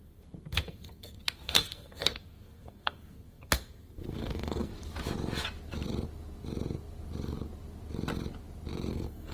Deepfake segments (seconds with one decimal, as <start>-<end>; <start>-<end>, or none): 0.0-4.7; 8.9-9.3